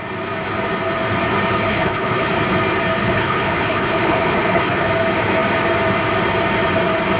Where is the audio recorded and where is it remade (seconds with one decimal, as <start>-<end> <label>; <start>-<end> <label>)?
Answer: 0.0-1.7 recorded; 1.7-2.3 remade; 2.3-3.0 recorded; 3.0-4.9 remade; 4.9-7.2 recorded